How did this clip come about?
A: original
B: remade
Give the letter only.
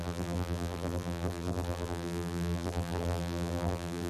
B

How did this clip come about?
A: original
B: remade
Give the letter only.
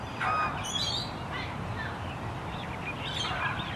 A